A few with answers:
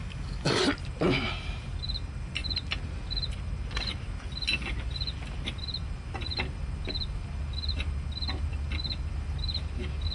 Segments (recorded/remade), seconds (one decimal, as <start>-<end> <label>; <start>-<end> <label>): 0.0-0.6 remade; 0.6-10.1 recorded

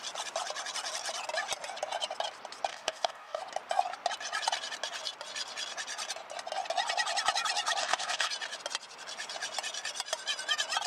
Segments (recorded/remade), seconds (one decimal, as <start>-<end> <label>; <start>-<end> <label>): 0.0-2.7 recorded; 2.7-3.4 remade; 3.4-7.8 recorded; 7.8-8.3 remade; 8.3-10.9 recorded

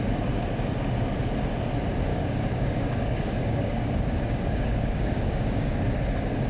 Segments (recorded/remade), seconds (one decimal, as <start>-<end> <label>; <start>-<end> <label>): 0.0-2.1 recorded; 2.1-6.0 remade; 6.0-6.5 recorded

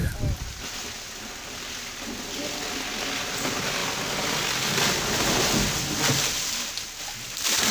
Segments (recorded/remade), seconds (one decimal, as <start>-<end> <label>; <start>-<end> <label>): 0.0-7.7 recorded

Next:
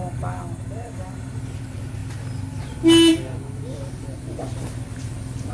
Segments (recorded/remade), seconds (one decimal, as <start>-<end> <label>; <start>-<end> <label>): 0.0-1.4 remade; 1.4-5.5 recorded

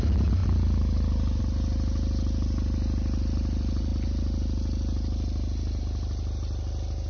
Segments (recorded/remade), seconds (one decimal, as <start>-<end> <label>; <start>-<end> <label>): 0.0-7.1 recorded

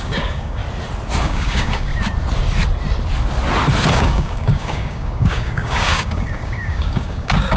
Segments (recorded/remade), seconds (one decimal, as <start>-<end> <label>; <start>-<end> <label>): 0.0-0.6 remade; 0.6-1.2 recorded; 1.2-1.9 remade; 1.9-3.9 recorded; 3.9-7.6 remade